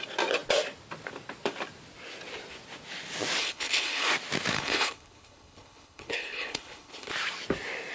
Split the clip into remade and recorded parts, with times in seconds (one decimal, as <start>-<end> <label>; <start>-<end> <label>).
0.0-3.4 recorded; 3.4-4.1 remade; 4.1-4.5 recorded; 4.5-7.1 remade; 7.1-7.9 recorded